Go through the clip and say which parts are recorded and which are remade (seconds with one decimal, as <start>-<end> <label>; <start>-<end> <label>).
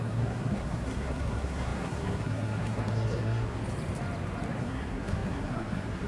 0.0-3.6 remade; 3.6-4.6 recorded; 4.6-6.1 remade